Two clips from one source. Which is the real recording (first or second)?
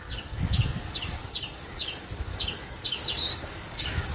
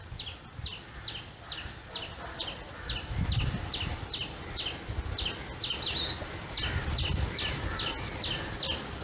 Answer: second